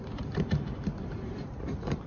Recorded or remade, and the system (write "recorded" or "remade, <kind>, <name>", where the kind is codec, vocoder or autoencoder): remade, vocoder, BigVGAN v2